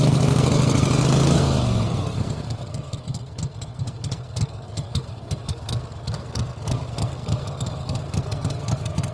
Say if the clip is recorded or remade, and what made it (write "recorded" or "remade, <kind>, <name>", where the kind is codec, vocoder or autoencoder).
remade, codec, SNAC